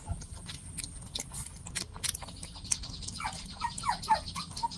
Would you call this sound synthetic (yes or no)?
no